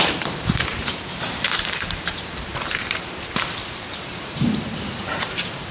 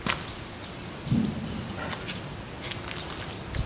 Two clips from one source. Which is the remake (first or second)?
first